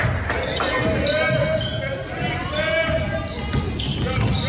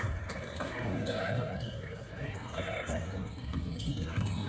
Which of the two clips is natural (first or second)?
first